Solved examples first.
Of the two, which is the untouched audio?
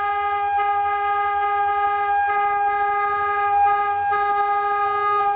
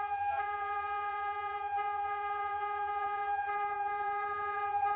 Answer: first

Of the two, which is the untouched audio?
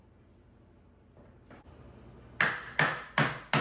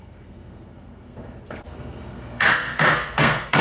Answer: first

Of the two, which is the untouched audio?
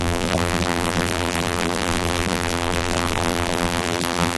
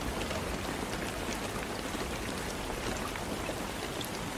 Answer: second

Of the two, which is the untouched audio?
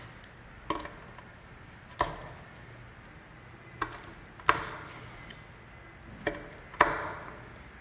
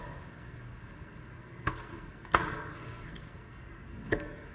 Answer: first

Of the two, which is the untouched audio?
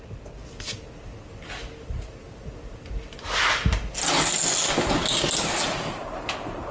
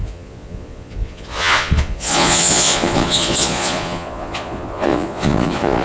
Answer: first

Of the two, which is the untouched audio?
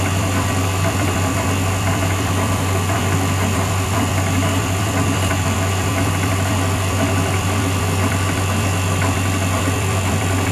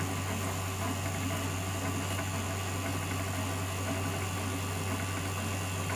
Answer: second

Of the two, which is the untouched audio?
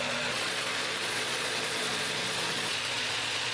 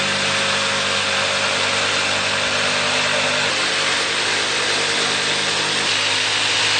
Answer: second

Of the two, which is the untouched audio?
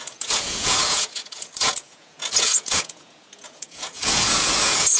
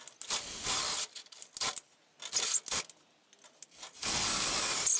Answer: second